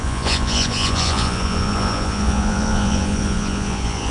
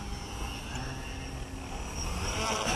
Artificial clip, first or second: first